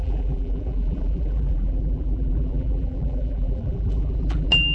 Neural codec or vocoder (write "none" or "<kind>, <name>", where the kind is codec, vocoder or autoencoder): vocoder, BigVGAN v2